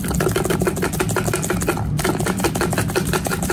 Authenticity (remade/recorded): recorded